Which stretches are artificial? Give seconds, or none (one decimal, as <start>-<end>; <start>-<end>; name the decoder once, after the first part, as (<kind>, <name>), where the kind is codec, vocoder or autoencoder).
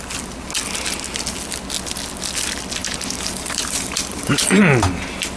2.8-4.6 (vocoder, BigVGAN v2)